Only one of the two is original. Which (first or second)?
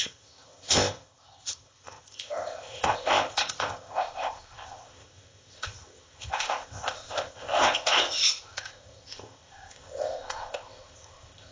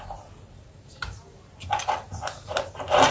second